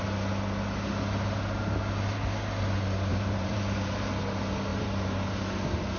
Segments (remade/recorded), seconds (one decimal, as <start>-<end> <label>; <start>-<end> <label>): 0.0-3.1 recorded; 3.1-4.1 remade; 4.1-4.7 recorded; 4.7-5.3 remade; 5.3-6.0 recorded